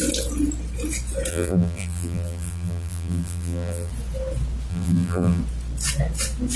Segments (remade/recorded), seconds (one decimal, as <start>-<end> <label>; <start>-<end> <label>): 0.0-1.3 recorded; 1.3-3.9 remade; 3.9-4.7 recorded; 4.7-5.4 remade; 5.4-6.6 recorded